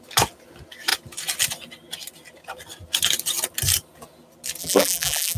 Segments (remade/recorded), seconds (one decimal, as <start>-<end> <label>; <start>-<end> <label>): 0.0-4.6 recorded; 4.6-5.4 remade